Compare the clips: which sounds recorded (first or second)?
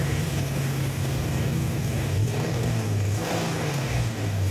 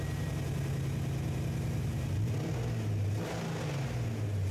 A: second